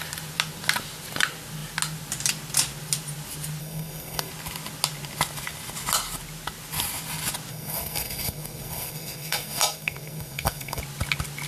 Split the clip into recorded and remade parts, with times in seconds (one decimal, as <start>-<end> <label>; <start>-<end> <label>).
0.0-3.6 recorded; 3.6-4.3 remade; 4.3-7.5 recorded; 7.5-10.8 remade; 10.8-11.5 recorded